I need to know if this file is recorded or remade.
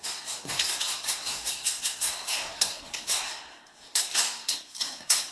remade